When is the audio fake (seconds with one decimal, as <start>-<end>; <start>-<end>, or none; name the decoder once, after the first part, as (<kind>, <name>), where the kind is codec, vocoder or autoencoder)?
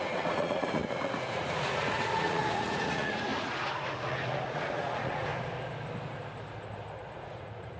0.0-5.3 (vocoder, Vocos); 7.0-7.8